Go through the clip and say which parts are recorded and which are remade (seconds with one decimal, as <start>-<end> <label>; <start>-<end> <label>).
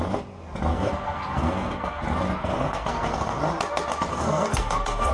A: 0.0-0.7 recorded; 0.7-2.0 remade; 2.0-2.4 recorded; 2.4-3.4 remade; 3.4-4.1 recorded; 4.1-5.1 remade